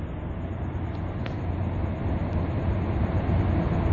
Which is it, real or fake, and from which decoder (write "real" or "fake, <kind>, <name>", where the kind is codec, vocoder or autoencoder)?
real